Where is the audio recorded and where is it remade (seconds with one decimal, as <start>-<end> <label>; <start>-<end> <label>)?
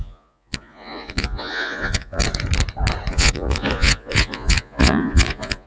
0.0-2.2 remade; 2.2-3.1 recorded; 3.1-5.7 remade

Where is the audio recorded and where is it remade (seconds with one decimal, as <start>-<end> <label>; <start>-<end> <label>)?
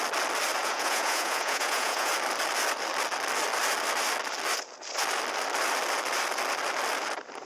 0.0-0.6 recorded; 0.6-2.1 remade; 2.1-7.4 recorded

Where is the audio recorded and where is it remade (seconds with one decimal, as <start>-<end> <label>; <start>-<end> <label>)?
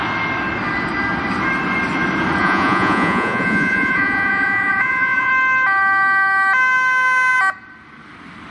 0.0-2.4 recorded; 2.4-5.3 remade; 5.3-8.5 recorded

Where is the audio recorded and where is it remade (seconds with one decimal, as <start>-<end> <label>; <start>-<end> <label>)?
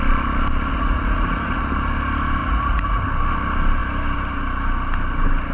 0.0-0.7 recorded; 0.7-1.6 remade; 1.6-2.4 recorded; 2.4-3.0 remade; 3.0-5.5 recorded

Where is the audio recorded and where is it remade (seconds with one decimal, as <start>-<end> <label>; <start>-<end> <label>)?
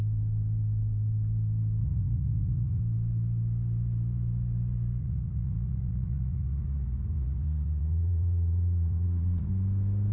0.0-1.8 recorded; 1.8-2.8 remade; 2.8-5.0 recorded; 5.0-9.5 remade; 9.5-10.1 recorded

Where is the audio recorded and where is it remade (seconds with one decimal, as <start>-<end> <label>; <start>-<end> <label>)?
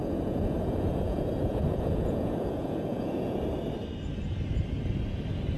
0.0-3.4 remade; 3.4-5.6 recorded